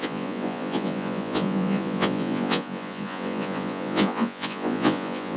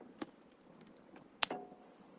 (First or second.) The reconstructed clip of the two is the first